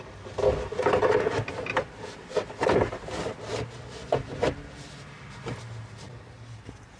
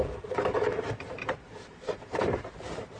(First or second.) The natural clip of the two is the first